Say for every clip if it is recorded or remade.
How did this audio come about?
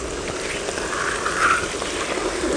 recorded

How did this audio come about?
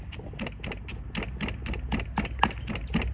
recorded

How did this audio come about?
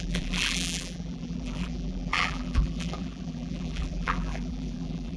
remade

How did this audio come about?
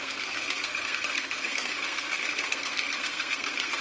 remade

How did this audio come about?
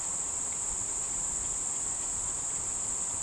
remade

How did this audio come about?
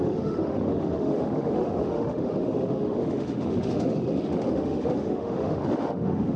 remade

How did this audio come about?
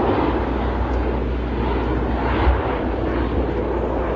recorded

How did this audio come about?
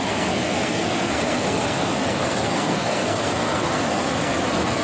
remade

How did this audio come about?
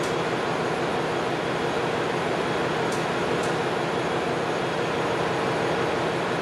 recorded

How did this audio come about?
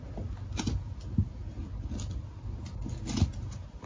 recorded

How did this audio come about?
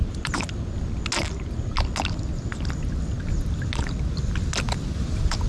recorded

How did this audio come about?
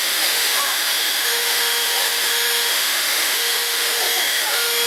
remade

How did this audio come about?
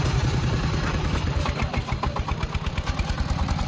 recorded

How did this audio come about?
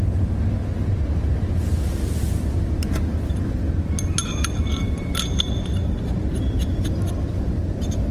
recorded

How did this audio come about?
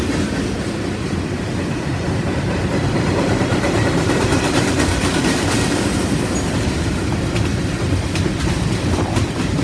remade